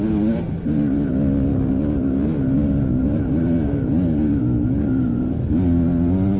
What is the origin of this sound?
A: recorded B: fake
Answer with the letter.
A